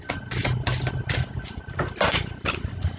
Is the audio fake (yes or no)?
no